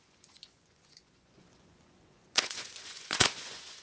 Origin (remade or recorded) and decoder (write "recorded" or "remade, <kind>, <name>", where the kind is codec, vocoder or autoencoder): remade, vocoder, Vocos